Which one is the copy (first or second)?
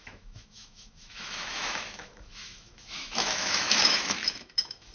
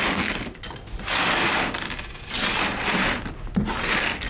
first